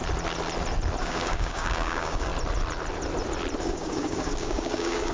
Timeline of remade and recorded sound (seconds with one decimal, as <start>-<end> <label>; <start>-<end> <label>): 0.0-1.0 recorded; 1.0-2.3 remade; 2.3-3.6 recorded; 3.6-5.1 remade